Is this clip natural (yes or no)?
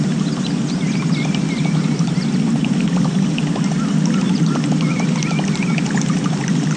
yes